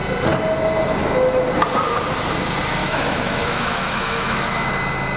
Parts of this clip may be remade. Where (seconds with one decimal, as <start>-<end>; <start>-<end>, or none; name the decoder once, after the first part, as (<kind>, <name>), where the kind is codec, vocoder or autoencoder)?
1.0-1.5 (autoencoder, DAC-VAE); 2.8-4.7